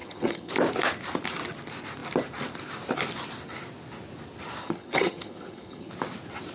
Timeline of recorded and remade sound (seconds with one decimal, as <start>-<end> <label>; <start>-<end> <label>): 0.0-0.5 remade; 0.5-4.6 recorded; 4.6-5.9 remade; 5.9-6.5 recorded